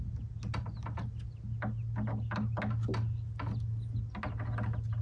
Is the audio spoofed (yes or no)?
no